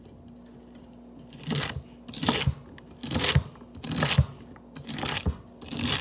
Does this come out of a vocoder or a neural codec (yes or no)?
no